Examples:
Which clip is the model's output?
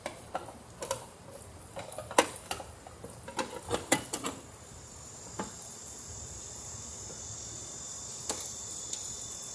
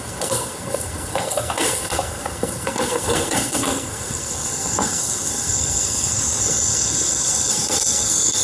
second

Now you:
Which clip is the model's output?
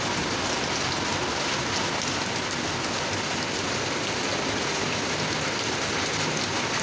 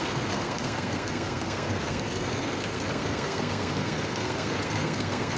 second